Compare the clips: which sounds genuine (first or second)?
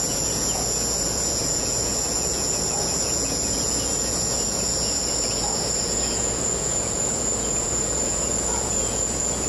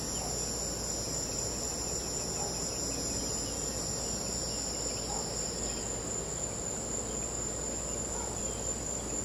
second